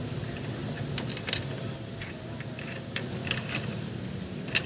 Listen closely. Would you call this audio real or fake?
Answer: real